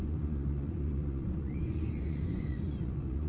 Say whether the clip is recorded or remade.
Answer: remade